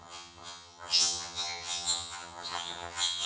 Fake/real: fake